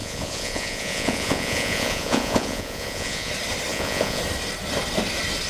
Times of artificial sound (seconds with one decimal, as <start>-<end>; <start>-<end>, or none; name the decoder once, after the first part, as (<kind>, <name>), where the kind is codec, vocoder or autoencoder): 0.0-3.3 (vocoder, Vocos); 3.7-4.2